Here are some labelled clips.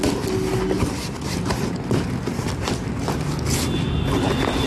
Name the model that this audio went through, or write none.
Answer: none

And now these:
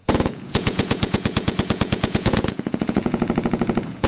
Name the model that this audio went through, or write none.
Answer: vocoder, Vocos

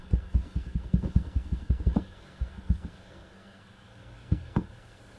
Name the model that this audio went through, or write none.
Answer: codec, SNAC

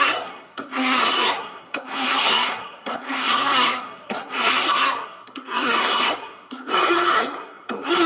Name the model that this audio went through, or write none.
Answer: codec, SNAC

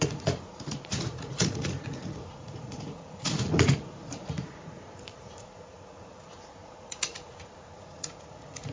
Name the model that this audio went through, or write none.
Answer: vocoder, Vocos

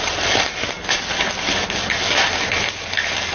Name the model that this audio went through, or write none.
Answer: none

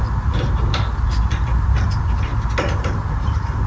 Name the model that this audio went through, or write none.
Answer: none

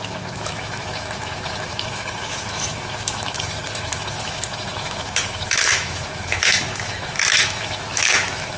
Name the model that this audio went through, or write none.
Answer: autoencoder, DAC-VAE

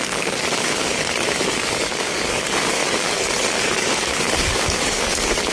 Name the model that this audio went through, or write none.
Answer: codec, DAC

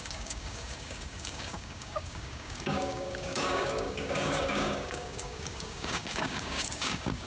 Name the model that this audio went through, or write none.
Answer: codec, DAC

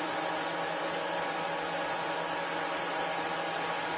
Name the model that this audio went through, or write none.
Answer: none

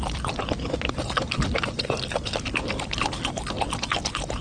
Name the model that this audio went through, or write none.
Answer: none